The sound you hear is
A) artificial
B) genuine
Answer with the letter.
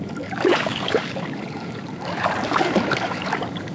A